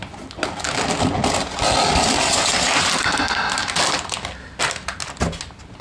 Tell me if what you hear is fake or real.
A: real